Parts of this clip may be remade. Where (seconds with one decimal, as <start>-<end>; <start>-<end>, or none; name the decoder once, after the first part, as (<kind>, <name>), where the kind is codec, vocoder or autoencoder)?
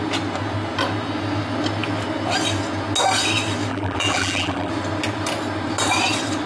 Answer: 3.7-4.7 (vocoder, BigVGAN v2)